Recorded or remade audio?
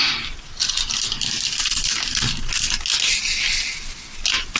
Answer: recorded